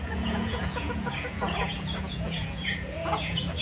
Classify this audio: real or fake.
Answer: fake